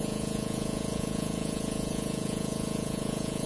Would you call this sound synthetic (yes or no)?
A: yes